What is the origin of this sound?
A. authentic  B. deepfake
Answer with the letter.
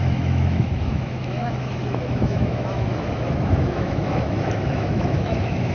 B